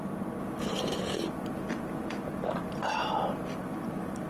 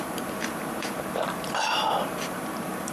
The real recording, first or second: first